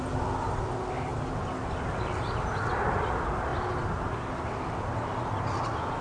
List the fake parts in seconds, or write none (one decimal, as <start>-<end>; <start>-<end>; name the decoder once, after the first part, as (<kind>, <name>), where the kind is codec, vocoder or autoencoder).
none